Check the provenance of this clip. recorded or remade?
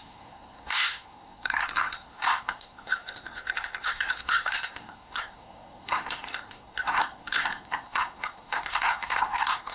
remade